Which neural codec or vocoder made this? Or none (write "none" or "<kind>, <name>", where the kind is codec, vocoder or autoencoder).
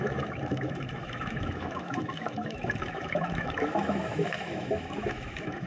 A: autoencoder, DAC-VAE